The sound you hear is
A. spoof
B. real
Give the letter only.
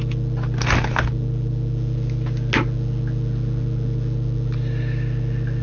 B